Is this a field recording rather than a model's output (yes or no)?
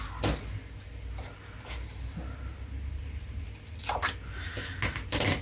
yes